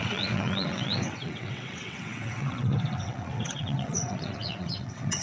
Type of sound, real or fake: fake